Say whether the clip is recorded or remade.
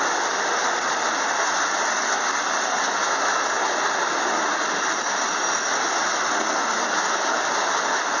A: recorded